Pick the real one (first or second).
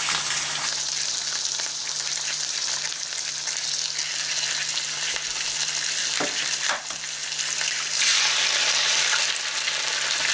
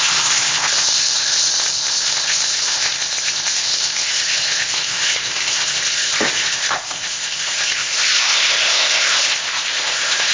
first